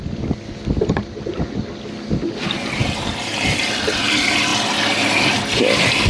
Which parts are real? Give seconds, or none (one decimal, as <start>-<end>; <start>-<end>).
0.0-6.1